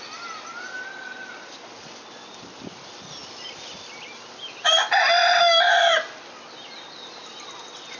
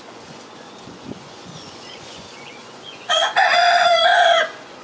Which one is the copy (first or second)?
second